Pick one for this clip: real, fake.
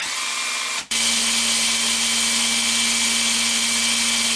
real